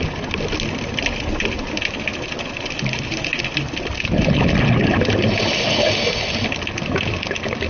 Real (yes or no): yes